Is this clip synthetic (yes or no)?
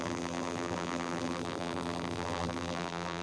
yes